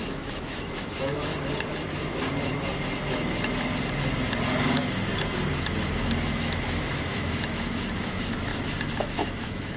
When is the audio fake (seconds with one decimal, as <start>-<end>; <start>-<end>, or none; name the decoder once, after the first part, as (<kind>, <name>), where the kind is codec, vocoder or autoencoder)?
0.0-1.3 (autoencoder, DAC-VAE); 6.3-8.5; 9.0-9.8